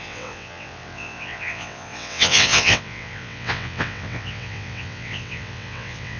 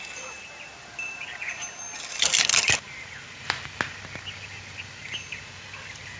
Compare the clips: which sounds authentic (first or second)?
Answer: second